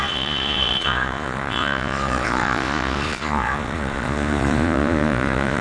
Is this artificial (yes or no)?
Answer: yes